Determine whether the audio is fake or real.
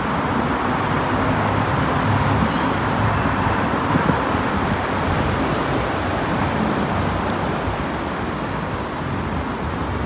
real